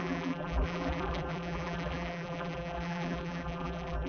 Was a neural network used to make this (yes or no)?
yes